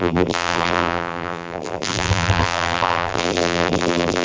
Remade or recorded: remade